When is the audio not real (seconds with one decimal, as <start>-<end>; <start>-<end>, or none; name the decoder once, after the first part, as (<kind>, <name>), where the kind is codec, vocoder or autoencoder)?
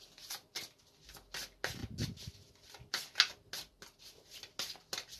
none